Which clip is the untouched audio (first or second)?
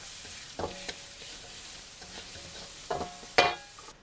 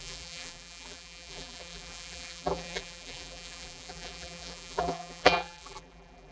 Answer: first